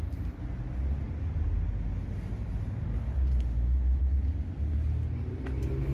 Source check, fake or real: real